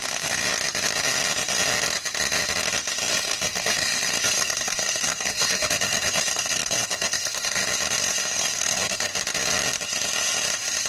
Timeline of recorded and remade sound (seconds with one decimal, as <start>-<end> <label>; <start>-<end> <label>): 0.0-0.4 remade; 0.4-3.1 recorded; 3.1-7.6 remade; 7.6-8.2 recorded; 8.2-9.1 remade; 9.1-10.9 recorded